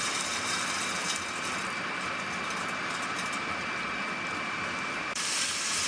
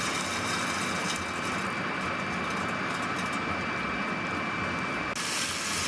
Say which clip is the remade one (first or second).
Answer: first